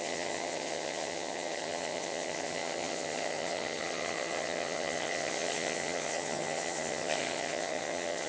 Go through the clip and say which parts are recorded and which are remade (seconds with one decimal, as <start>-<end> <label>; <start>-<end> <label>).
0.0-8.3 remade

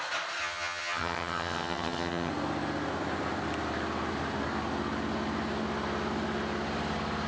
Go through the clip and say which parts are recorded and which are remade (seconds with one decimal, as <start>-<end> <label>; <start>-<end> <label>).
0.0-0.4 recorded; 0.4-2.3 remade; 2.3-7.3 recorded

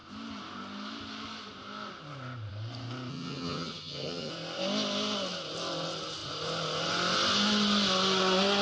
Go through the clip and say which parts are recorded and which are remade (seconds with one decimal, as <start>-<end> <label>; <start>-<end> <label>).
0.0-3.1 recorded; 3.1-4.3 remade; 4.3-8.6 recorded

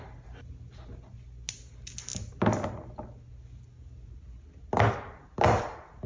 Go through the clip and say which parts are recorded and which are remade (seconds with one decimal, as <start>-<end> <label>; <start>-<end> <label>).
0.0-6.1 recorded

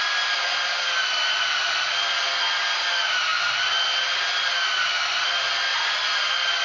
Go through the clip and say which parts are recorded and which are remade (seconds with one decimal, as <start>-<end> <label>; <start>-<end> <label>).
0.0-6.6 recorded

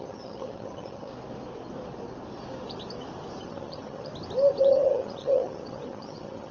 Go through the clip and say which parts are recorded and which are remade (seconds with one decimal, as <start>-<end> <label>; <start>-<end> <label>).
0.0-1.1 remade; 1.1-3.4 recorded; 3.4-4.1 remade; 4.1-4.6 recorded; 4.6-6.5 remade

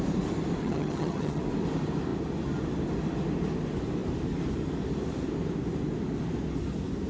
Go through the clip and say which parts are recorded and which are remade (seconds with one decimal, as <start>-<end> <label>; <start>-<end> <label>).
0.0-0.6 recorded; 0.6-1.4 remade; 1.4-7.1 recorded

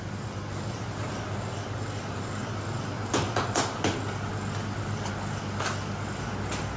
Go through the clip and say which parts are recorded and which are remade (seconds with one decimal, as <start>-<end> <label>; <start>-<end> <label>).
0.0-6.8 recorded